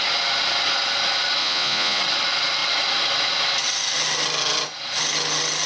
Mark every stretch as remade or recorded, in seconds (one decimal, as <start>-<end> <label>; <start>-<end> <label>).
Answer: 0.0-1.4 recorded; 1.4-2.0 remade; 2.0-5.7 recorded

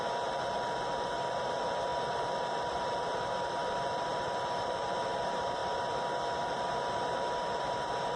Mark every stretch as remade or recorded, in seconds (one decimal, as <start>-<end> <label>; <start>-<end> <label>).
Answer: 0.0-5.6 remade; 5.6-6.5 recorded; 6.5-8.2 remade

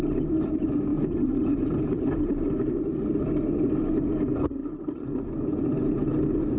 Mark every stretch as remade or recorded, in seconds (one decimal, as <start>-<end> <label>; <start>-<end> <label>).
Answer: 0.0-0.9 recorded; 0.9-3.3 remade; 3.3-4.6 recorded; 4.6-5.3 remade; 5.3-6.6 recorded

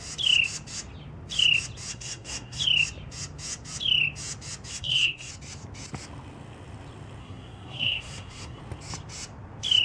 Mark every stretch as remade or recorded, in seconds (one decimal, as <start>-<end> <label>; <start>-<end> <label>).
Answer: 0.0-1.9 recorded; 1.9-2.6 remade; 2.6-4.7 recorded; 4.7-5.3 remade; 5.3-7.2 recorded; 7.2-8.6 remade; 8.6-9.8 recorded

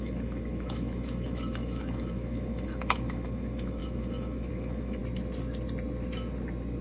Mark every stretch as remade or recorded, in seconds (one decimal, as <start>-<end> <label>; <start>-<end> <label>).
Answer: 0.0-5.0 remade; 5.0-6.8 recorded

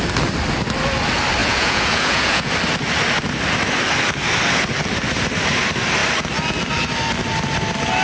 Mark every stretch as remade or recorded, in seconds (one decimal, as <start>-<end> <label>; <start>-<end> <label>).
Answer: 0.0-1.4 recorded; 1.4-2.5 remade; 2.5-8.0 recorded